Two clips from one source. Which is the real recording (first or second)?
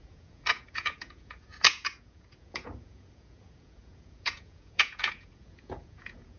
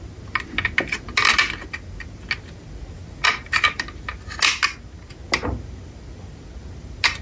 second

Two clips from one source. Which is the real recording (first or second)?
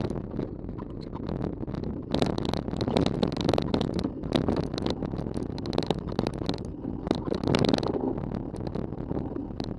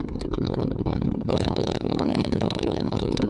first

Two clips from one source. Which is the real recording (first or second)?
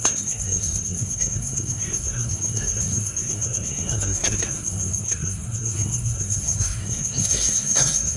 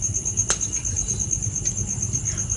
second